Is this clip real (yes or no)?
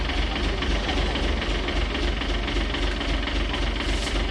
yes